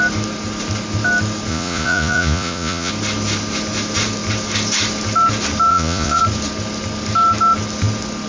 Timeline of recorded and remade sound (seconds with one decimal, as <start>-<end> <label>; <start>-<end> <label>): 0.0-1.5 recorded; 1.5-2.9 remade; 2.9-5.7 recorded; 5.7-6.2 remade; 6.2-8.3 recorded